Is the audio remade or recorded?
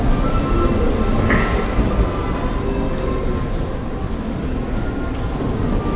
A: recorded